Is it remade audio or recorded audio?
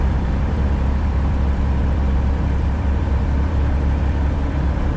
remade